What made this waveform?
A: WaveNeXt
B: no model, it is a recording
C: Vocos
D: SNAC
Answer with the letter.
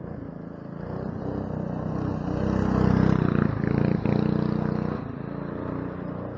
B